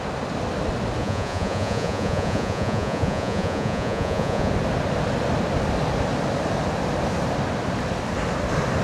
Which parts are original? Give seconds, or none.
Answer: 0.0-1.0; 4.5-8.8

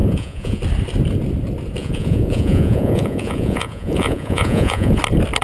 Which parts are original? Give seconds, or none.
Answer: 0.6-1.8; 5.0-5.4